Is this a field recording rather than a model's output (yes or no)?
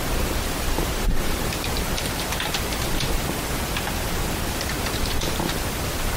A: no